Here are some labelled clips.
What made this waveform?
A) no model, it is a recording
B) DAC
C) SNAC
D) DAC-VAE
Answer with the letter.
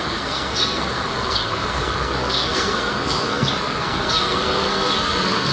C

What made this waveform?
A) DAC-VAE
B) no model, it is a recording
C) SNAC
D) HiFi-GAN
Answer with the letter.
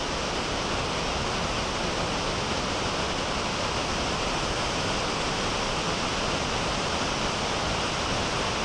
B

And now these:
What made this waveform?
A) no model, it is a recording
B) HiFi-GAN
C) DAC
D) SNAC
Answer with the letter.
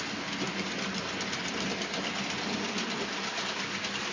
A